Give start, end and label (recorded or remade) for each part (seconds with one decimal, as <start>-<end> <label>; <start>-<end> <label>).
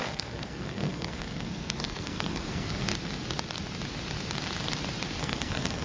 0.0-2.9 remade; 2.9-5.2 recorded; 5.2-5.8 remade